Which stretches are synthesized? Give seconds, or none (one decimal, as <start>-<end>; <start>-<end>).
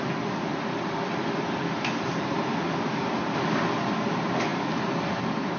0.5-3.2